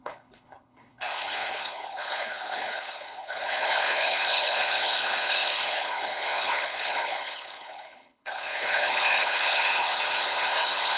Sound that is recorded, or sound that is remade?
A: remade